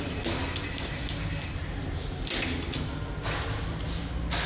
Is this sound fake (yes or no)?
no